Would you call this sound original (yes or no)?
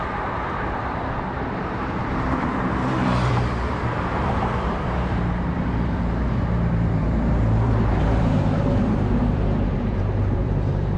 no